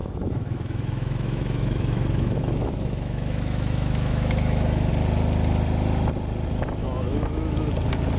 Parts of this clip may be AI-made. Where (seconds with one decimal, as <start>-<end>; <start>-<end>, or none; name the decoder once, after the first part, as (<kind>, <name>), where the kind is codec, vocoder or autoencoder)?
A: 0.0-4.9 (autoencoder, DAC-VAE); 6.8-7.7